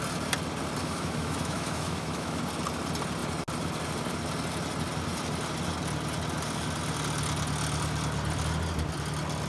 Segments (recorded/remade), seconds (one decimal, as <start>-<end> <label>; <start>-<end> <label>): 0.0-0.8 recorded; 0.8-2.4 remade; 2.4-9.5 recorded